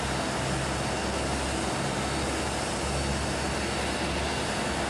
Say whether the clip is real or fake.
real